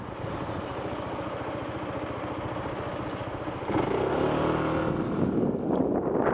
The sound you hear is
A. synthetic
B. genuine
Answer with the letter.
B